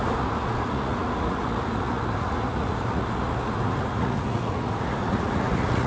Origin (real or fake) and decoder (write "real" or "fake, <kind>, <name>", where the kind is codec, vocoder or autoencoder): fake, vocoder, Vocos